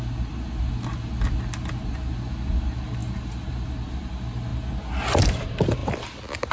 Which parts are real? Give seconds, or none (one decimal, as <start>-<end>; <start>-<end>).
0.0-6.5